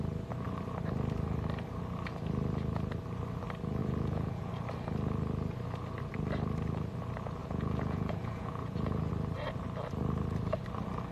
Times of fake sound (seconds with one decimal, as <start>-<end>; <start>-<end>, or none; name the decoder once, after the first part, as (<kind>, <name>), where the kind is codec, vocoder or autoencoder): 3.8-4.5 (vocoder, Vocos); 7.4-9.1